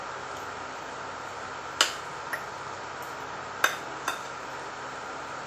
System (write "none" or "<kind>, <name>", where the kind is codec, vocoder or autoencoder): none